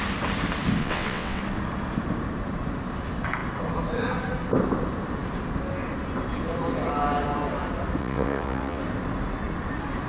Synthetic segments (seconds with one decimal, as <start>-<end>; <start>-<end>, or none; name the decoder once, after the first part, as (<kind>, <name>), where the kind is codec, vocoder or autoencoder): 0.8-1.4 (vocoder, WaveNeXt); 8.0-8.8